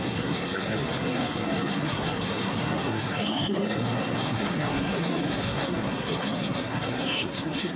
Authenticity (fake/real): fake